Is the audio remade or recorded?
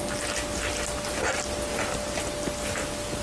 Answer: recorded